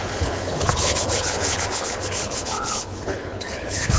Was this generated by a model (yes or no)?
yes